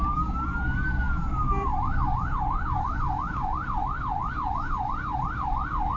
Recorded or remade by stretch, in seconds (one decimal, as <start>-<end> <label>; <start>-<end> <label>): 0.0-6.0 recorded